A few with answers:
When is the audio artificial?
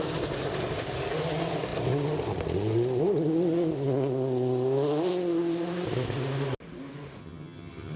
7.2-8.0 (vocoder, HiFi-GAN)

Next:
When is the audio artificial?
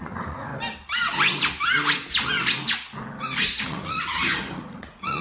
0.0-0.5 (vocoder, Vocos); 3.6-5.2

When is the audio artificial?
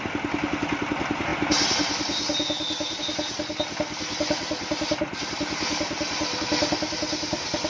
none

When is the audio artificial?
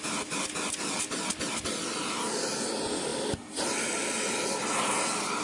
none